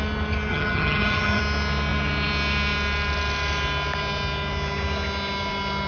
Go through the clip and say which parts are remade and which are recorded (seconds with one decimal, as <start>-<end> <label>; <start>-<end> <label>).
0.0-0.5 recorded; 0.5-1.4 remade; 1.4-5.9 recorded